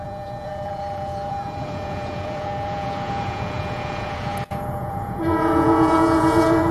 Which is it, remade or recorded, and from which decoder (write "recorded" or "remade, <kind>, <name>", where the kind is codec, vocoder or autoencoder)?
remade, vocoder, Vocos